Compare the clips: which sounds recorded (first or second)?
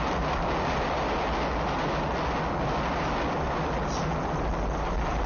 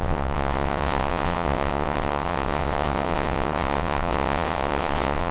first